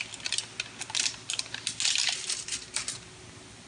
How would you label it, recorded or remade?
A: recorded